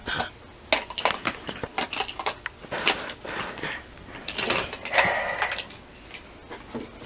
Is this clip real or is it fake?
real